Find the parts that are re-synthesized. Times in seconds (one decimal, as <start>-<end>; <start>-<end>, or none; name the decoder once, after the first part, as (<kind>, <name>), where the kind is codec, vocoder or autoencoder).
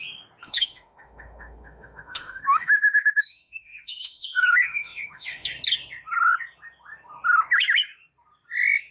0.4-5.5 (autoencoder, DAC-VAE)